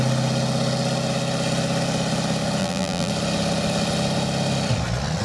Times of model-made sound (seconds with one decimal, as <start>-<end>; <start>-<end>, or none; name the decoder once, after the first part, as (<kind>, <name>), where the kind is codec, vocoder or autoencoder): 2.6-3.1 (vocoder, BigVGAN v2)